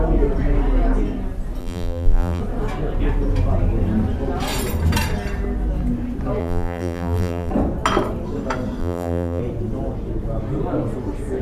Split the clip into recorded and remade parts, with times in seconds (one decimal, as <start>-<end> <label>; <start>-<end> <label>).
0.0-1.6 recorded; 1.6-2.4 remade; 2.4-6.4 recorded; 6.4-7.5 remade; 7.5-8.8 recorded; 8.8-9.4 remade; 9.4-11.4 recorded